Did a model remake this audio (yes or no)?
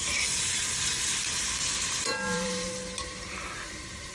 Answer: yes